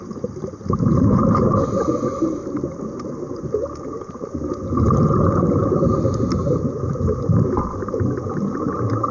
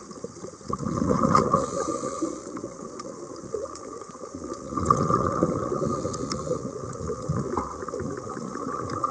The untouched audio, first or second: first